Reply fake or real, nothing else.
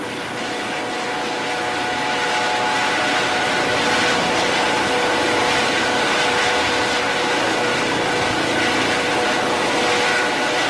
real